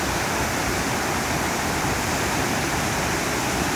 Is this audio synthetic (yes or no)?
yes